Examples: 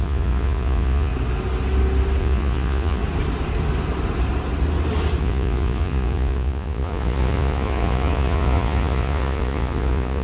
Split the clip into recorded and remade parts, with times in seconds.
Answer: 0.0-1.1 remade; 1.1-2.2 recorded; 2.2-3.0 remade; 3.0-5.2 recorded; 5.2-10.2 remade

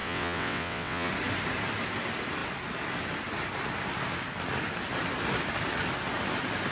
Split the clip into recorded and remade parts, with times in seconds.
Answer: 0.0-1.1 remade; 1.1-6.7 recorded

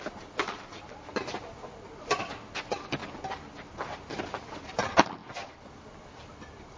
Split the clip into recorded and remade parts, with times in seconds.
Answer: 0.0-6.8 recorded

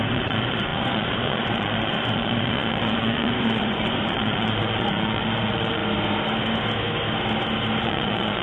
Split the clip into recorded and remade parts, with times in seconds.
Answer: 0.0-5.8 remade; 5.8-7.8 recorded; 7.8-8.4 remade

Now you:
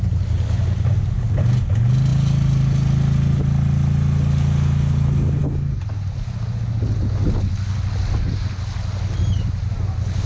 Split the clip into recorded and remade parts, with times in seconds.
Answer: 0.0-10.3 recorded

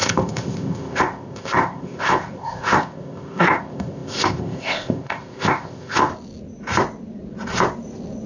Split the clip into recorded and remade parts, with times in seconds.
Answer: 0.0-6.1 remade; 6.1-8.3 recorded

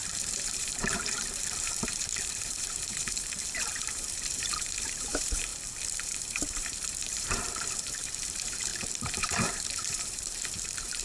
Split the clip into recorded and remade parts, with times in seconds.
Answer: 0.0-5.5 remade; 5.5-6.0 recorded; 6.0-8.7 remade; 8.7-9.2 recorded; 9.2-11.0 remade